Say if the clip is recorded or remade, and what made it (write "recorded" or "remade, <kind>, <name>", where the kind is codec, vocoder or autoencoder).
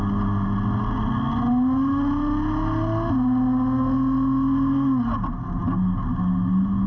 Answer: recorded